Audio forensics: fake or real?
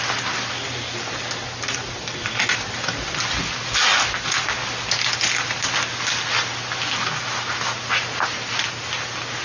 real